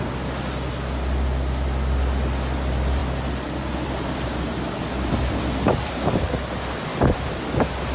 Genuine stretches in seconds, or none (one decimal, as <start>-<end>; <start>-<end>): 0.0-7.9